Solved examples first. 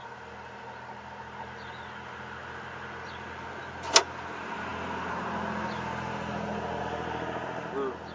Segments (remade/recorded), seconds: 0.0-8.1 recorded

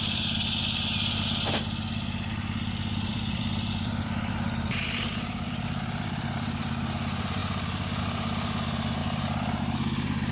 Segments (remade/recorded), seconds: 0.0-3.1 recorded; 3.1-6.6 remade; 6.6-9.0 recorded; 9.0-9.6 remade; 9.6-10.3 recorded

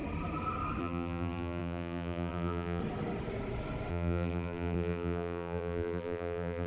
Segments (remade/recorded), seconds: 0.0-0.8 recorded; 0.8-2.8 remade; 2.8-3.9 recorded; 3.9-6.7 remade

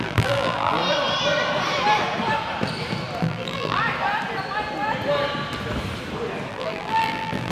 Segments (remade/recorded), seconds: 0.0-0.8 remade; 0.8-3.2 recorded; 3.2-3.8 remade; 3.8-6.5 recorded; 6.5-7.5 remade

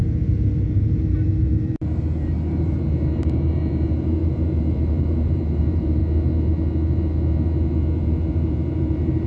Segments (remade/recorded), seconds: 0.0-6.0 remade; 6.0-8.0 recorded; 8.0-9.3 remade

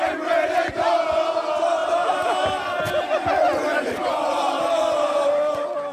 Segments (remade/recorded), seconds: 0.0-1.8 recorded; 1.8-5.3 remade; 5.3-5.9 recorded

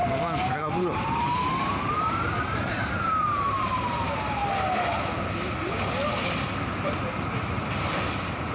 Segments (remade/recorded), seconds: 0.0-4.4 remade; 4.4-6.2 recorded; 6.2-8.5 remade